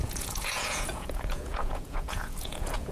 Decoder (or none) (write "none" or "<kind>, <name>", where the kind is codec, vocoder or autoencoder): vocoder, Vocos